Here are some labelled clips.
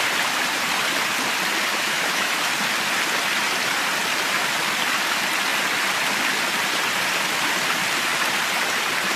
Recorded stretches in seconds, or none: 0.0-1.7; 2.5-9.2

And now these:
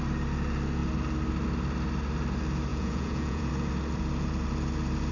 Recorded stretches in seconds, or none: 0.0-2.7; 3.5-5.1